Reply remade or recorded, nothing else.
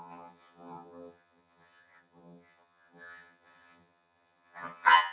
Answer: remade